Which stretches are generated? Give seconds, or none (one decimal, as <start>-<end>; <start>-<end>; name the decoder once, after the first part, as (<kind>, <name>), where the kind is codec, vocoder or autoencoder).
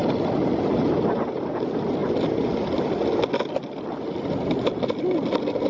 0.0-1.5 (vocoder, BigVGAN v2); 2.0-5.7